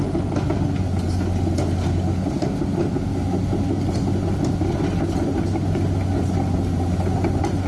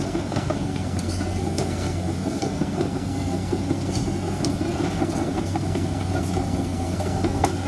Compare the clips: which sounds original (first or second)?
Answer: first